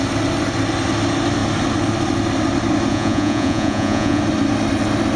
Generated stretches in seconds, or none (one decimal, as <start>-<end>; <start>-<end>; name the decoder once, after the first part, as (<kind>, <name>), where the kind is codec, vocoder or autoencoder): 2.9-4.2 (vocoder, Vocos)